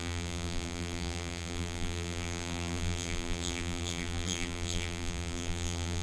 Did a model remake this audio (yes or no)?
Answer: yes